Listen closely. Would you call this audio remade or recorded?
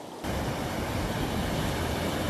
recorded